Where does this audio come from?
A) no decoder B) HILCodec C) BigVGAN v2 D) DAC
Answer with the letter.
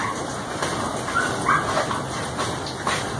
A